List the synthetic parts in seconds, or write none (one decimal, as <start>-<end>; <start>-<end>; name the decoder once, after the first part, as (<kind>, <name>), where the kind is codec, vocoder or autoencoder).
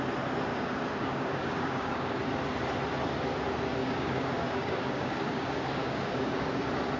0.5-2.2 (codec, DAC); 3.8-6.6